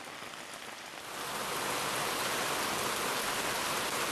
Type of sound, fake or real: real